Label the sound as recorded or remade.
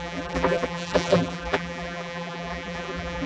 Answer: remade